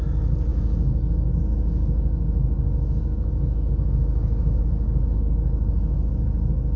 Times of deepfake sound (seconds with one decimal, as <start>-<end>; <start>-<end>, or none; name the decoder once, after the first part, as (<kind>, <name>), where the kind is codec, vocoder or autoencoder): 0.5-4.6 (autoencoder, DAC-VAE)